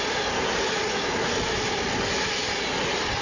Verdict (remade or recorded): recorded